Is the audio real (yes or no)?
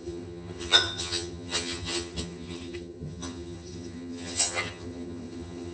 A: no